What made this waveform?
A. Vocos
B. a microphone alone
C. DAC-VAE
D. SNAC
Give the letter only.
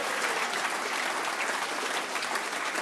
B